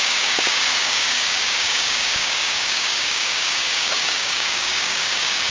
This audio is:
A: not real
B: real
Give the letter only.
A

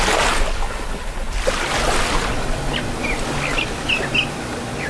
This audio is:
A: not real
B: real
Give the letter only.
B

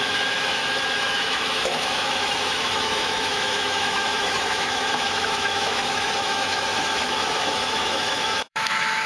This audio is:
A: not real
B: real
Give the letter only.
A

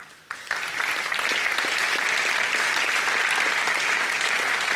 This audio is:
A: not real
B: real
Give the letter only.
B